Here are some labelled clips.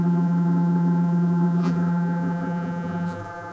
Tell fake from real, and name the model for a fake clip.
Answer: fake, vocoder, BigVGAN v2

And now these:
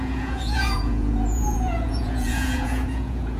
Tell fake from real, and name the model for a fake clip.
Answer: fake, vocoder, Vocos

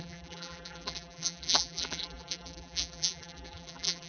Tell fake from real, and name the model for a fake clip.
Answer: fake, vocoder, BigVGAN v2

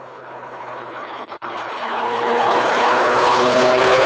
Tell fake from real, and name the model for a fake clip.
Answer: fake, codec, HILCodec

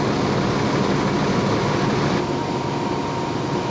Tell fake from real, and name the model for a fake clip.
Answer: real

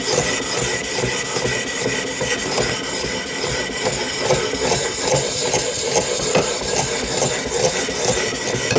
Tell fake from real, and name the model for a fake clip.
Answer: real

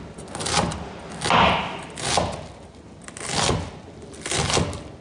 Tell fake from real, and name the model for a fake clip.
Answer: real